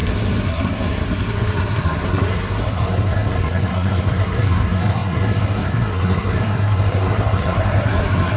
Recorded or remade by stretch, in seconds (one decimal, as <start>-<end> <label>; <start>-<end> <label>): 0.0-8.4 remade